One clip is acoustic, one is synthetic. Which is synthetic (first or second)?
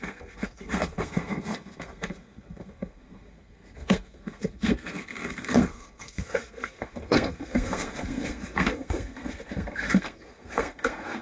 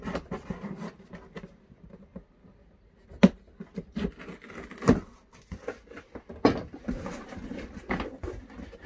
first